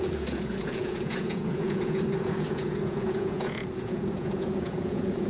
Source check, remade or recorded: remade